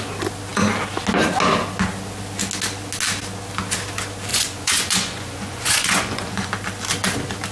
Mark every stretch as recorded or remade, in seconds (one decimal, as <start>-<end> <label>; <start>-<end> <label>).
0.0-4.3 recorded; 4.3-6.5 remade; 6.5-7.5 recorded